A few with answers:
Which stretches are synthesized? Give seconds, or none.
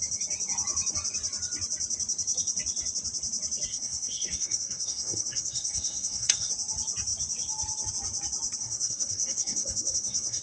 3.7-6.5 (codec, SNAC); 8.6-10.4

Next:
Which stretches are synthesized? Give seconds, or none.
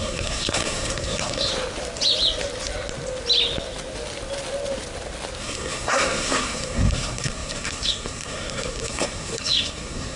0.0-1.5 (codec, SNAC); 5.4-10.2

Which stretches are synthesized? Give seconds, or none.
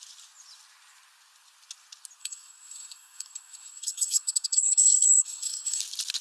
2.2-5.8 (codec, SNAC)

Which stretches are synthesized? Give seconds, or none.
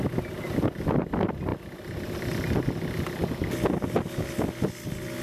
none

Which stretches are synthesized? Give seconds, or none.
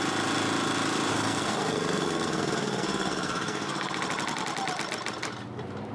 1.1-3.9 (codec, SNAC)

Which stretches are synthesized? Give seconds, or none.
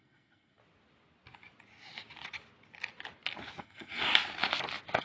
0.0-0.6 (codec, SNAC); 3.6-4.0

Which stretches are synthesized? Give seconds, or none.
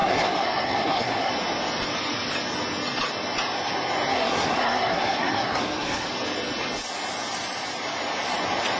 0.0-1.3 (codec, SNAC); 4.1-6.1